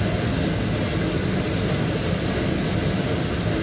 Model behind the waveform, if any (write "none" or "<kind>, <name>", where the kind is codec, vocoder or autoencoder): none